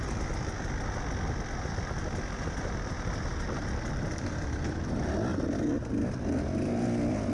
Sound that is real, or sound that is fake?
real